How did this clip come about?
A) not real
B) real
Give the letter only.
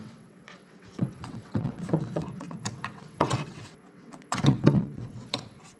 A